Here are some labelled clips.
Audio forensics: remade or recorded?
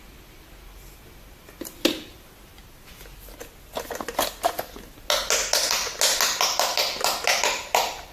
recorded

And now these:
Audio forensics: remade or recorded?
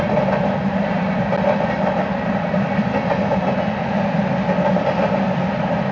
recorded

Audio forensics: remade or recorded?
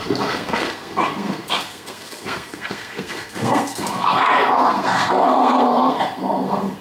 remade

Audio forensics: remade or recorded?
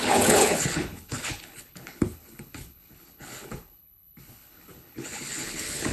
remade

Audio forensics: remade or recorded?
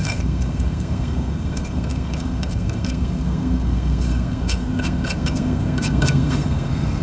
remade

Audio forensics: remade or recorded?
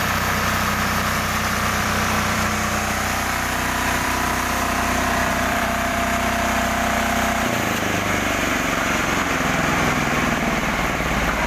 remade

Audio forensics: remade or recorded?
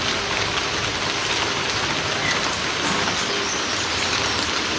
recorded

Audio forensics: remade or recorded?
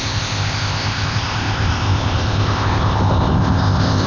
remade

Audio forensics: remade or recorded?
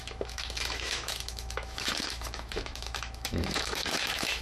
remade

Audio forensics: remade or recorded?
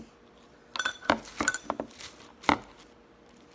recorded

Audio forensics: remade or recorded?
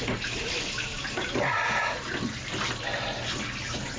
recorded